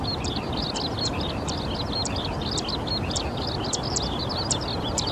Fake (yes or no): no